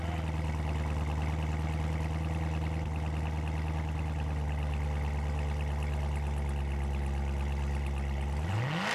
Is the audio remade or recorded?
recorded